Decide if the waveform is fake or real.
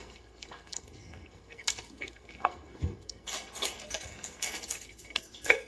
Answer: fake